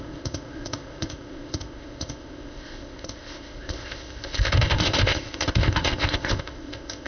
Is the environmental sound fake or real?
fake